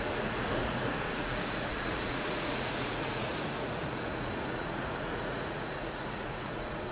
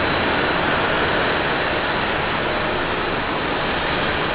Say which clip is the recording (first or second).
second